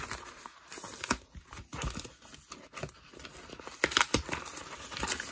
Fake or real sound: real